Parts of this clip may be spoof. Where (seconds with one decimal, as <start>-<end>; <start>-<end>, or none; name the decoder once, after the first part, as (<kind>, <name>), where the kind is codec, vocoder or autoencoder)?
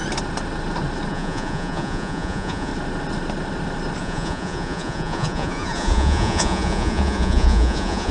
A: 1.1-2.7 (vocoder, Vocos); 4.0-8.1